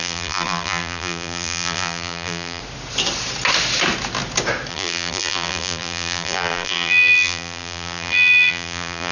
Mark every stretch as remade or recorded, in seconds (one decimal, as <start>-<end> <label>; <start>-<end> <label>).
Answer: 0.0-2.6 remade; 2.6-4.7 recorded; 4.7-9.1 remade